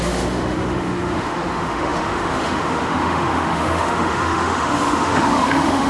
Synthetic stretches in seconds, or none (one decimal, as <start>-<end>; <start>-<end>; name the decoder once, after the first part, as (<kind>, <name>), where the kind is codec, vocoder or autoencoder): 0.0-5.9 (autoencoder, DAC-VAE)